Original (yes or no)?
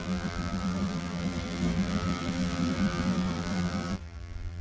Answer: no